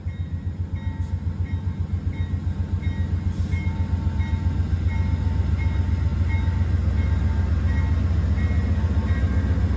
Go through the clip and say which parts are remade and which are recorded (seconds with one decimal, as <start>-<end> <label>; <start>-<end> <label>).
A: 0.0-9.8 recorded